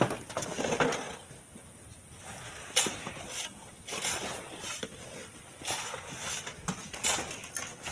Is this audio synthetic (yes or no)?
no